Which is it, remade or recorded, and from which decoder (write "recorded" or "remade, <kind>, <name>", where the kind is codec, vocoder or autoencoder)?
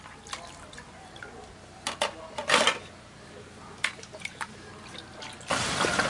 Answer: recorded